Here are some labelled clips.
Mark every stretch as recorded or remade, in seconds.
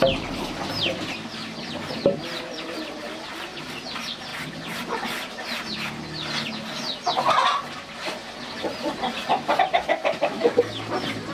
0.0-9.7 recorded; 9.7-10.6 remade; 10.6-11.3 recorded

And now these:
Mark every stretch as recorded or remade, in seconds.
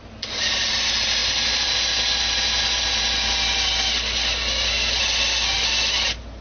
0.0-6.4 recorded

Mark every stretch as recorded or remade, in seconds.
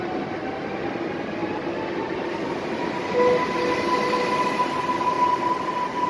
0.0-6.1 recorded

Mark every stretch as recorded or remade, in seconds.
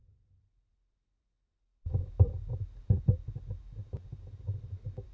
0.0-5.1 recorded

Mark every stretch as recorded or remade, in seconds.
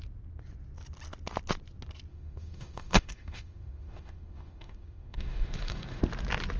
0.0-2.1 recorded; 2.1-6.0 remade; 6.0-6.6 recorded